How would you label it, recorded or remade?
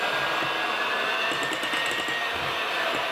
recorded